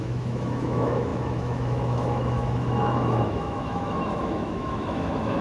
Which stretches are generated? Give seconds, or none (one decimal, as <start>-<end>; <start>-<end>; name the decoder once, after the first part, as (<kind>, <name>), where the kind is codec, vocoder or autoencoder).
0.0-5.4 (autoencoder, DAC-VAE)